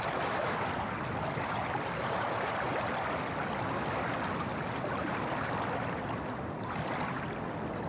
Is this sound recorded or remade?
recorded